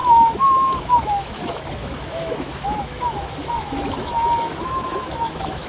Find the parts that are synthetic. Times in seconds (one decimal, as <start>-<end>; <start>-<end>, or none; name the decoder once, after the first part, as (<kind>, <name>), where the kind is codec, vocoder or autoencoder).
0.0-5.7 (autoencoder, DAC-VAE)